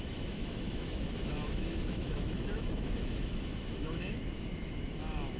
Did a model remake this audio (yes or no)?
yes